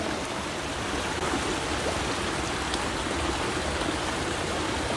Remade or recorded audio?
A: recorded